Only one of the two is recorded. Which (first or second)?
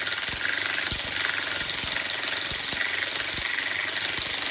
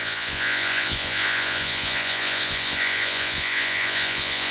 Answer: first